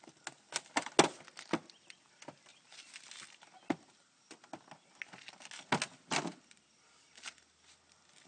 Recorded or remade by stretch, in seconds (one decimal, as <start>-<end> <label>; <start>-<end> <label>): 0.0-8.3 recorded